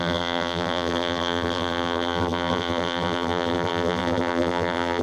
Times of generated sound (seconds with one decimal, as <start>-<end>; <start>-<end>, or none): 0.0-5.0